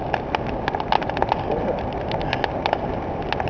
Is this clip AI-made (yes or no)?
no